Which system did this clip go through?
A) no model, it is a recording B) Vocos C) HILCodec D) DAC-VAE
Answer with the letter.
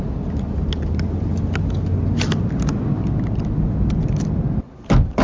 A